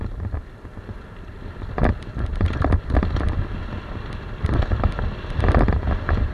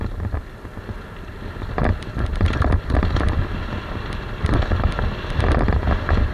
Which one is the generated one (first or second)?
first